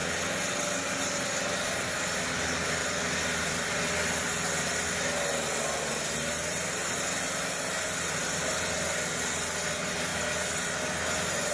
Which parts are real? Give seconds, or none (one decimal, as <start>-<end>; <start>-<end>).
0.0-11.5